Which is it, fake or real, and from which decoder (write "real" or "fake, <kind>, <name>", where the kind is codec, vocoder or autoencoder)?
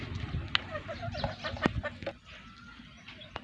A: real